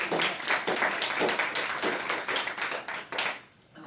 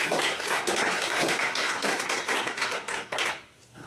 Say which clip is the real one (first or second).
first